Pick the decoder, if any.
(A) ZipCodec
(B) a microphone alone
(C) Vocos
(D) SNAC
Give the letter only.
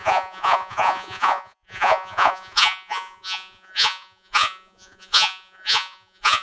C